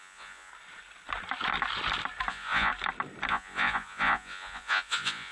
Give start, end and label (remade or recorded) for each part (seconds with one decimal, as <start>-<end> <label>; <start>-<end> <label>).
0.0-0.5 remade; 0.5-2.3 recorded; 2.3-2.7 remade; 2.7-3.3 recorded; 3.3-5.3 remade